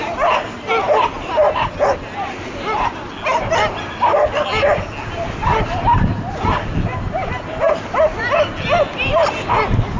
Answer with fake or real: real